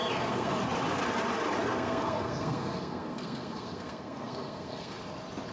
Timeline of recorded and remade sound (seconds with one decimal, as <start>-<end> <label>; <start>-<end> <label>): 0.0-0.5 remade; 0.5-1.7 recorded; 1.7-5.0 remade; 5.0-5.5 recorded

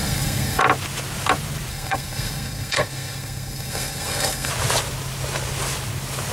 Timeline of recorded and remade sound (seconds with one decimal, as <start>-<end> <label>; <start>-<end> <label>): 0.0-0.6 remade; 0.6-1.7 recorded; 1.7-4.5 remade; 4.5-6.3 recorded

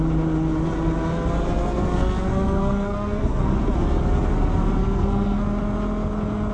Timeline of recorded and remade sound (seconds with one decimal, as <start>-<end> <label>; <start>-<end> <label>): 0.0-1.6 recorded; 1.6-3.6 remade; 3.6-4.8 recorded; 4.8-5.4 remade; 5.4-6.5 recorded

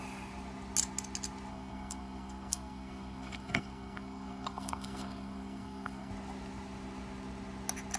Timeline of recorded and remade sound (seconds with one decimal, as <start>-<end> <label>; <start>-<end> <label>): 0.0-1.5 recorded; 1.5-6.1 remade; 6.1-8.0 recorded

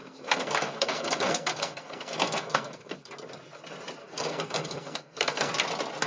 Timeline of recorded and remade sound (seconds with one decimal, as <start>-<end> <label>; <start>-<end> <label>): 0.0-3.1 remade; 3.1-4.0 recorded; 4.0-5.5 remade; 5.5-6.1 recorded

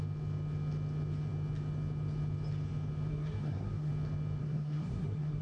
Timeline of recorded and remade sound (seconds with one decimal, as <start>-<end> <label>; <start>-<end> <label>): 0.0-3.1 recorded; 3.1-3.9 remade; 3.9-4.4 recorded; 4.4-5.4 remade

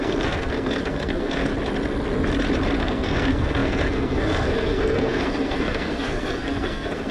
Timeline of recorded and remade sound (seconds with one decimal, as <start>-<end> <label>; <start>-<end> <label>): 0.0-1.5 remade; 1.5-2.8 recorded; 2.8-7.1 remade